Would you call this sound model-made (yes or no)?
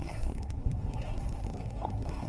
yes